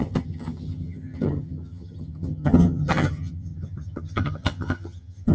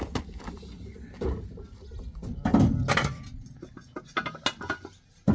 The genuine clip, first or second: second